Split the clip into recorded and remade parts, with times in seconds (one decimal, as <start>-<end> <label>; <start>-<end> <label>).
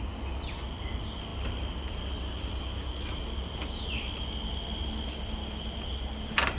0.0-6.6 recorded